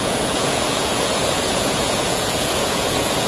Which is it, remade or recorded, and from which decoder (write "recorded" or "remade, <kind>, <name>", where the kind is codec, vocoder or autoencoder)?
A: remade, vocoder, Vocos